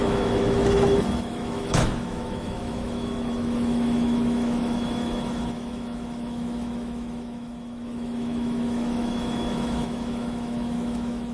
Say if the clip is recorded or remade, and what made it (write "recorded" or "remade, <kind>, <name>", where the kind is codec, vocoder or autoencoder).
remade, autoencoder, DAC-VAE